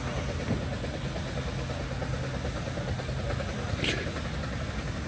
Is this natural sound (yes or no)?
yes